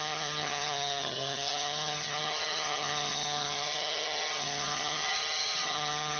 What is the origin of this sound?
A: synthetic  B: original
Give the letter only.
A